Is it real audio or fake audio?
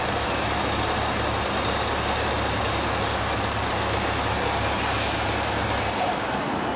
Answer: real